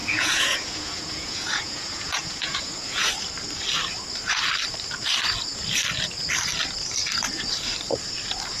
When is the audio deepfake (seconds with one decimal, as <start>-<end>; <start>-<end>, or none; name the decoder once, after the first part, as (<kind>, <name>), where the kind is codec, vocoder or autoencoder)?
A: 0.0-3.1 (vocoder, Vocos)